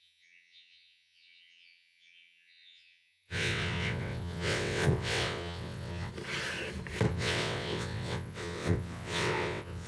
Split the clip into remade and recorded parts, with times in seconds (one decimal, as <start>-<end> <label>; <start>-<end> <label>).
0.0-6.1 remade; 6.1-7.1 recorded; 7.1-9.9 remade